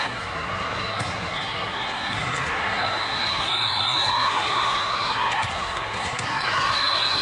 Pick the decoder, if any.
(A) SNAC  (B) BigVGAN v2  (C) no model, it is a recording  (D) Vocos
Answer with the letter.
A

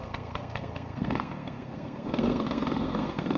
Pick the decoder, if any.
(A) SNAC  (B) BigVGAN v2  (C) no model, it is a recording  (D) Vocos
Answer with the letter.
A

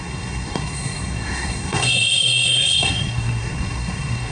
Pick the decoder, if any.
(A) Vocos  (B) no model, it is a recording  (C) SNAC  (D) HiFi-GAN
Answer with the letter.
C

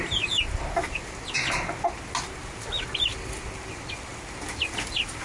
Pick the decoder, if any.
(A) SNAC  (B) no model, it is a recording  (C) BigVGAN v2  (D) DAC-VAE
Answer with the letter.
B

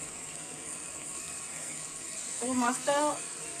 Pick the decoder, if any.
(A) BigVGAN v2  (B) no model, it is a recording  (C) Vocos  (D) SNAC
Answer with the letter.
D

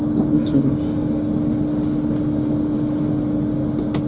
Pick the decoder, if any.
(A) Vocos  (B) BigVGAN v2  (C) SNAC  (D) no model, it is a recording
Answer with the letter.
D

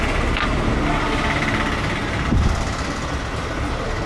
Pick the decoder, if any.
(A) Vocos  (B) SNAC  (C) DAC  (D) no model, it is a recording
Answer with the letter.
D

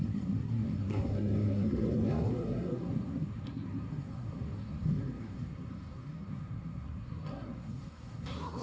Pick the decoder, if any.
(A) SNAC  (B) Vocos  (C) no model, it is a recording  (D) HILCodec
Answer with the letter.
A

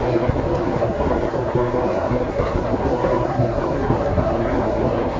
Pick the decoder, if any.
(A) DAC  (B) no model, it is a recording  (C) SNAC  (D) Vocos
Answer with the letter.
C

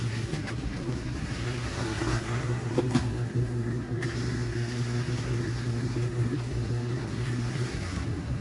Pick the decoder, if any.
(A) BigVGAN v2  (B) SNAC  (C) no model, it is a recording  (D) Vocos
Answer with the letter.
B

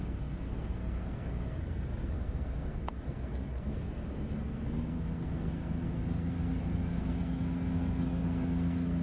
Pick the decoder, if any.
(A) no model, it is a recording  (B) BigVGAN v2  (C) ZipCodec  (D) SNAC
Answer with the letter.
D